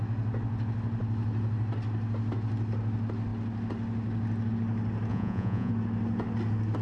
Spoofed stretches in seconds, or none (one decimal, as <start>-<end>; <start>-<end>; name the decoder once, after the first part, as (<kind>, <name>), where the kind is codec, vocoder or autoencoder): 5.1-5.7 (vocoder, Vocos)